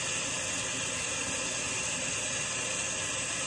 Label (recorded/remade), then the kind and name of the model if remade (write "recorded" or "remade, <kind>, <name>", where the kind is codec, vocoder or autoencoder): recorded